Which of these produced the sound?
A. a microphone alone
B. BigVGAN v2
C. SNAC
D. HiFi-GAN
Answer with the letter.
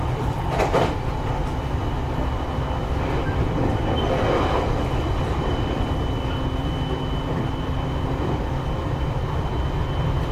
A